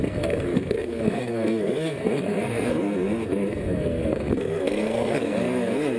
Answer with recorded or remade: remade